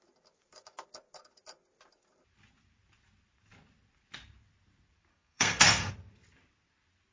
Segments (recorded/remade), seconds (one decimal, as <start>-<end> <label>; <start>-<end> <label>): 0.0-5.1 recorded; 5.1-5.9 remade; 5.9-7.1 recorded